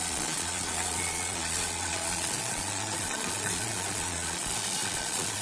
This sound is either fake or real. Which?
fake